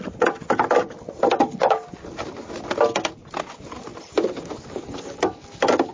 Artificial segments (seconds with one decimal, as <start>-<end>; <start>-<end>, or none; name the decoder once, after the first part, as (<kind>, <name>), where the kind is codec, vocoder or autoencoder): none